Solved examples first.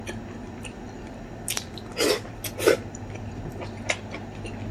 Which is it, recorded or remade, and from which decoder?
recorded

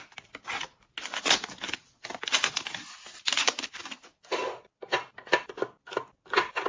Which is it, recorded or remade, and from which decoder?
recorded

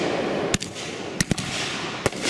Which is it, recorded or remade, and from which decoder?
recorded